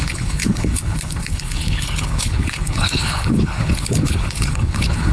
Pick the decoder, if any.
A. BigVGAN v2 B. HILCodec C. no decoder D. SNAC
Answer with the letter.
B